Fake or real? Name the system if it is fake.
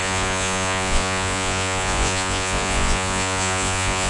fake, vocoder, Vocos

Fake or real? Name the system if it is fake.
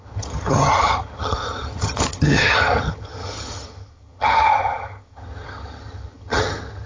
fake, vocoder, HiFi-GAN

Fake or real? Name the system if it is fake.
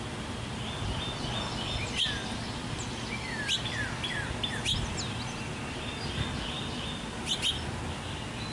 real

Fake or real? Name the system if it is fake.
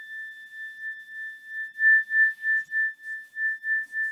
real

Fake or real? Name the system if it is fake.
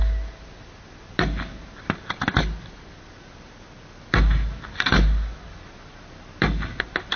real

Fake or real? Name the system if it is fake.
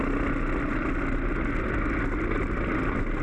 real